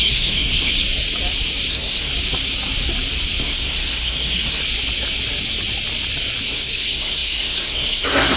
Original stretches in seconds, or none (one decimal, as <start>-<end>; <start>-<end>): 0.7-1.7; 2.1-3.4; 4.6-6.4